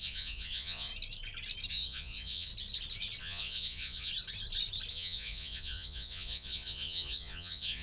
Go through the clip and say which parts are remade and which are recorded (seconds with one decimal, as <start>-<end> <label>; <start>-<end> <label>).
0.0-0.9 remade; 0.9-1.7 recorded; 1.7-2.5 remade; 2.5-3.2 recorded; 3.2-4.1 remade; 4.1-4.9 recorded; 4.9-7.8 remade